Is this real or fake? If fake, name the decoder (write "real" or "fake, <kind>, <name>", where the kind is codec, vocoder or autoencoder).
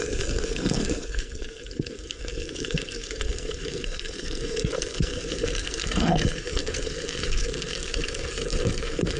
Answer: fake, codec, SNAC